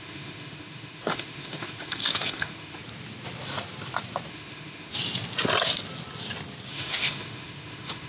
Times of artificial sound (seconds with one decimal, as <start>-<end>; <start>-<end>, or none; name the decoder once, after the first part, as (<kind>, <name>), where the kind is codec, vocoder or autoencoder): 0.0-2.8 (autoencoder, DAC-VAE); 4.3-4.9; 6.7-8.1